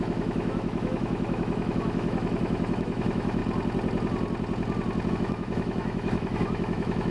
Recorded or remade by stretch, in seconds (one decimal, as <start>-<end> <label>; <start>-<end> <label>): 0.0-3.4 remade; 3.4-5.1 recorded; 5.1-7.1 remade